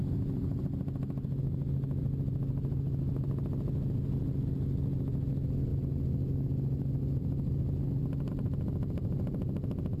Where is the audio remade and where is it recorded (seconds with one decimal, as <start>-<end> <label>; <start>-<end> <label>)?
0.0-10.0 recorded